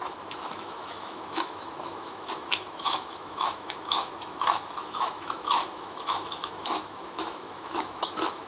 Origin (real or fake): fake